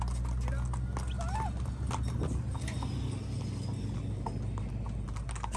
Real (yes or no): yes